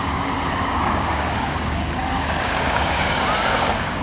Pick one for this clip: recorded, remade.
remade